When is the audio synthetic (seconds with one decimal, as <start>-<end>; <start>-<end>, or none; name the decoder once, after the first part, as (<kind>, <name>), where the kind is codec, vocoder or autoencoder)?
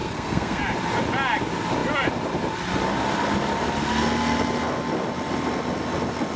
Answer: 0.0-0.6 (codec, SNAC)